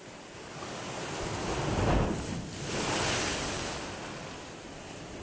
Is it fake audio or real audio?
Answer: real